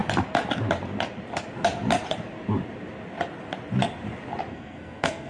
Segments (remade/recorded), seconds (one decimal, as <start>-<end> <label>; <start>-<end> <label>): 0.0-4.5 recorded; 4.5-5.3 remade